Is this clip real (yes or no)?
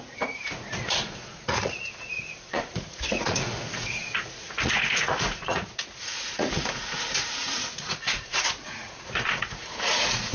no